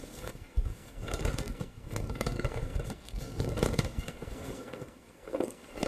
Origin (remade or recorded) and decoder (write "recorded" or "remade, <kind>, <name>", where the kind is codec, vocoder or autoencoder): remade, codec, SNAC